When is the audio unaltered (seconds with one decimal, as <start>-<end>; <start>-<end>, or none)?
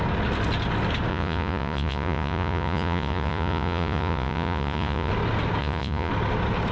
0.0-1.1; 5.1-5.6; 6.1-6.7